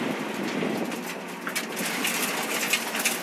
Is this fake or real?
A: real